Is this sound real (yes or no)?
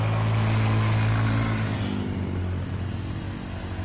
yes